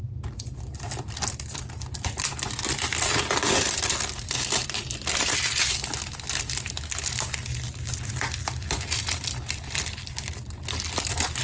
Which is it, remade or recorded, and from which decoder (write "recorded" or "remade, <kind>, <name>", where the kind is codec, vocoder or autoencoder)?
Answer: recorded